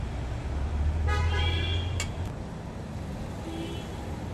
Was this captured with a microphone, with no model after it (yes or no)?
yes